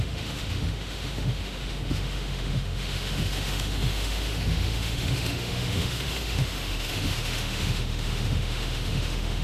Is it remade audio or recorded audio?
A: remade